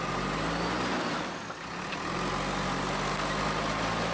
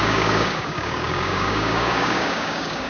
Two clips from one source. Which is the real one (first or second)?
first